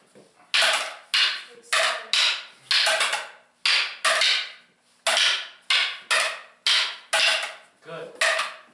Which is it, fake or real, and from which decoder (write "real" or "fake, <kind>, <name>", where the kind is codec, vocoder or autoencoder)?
real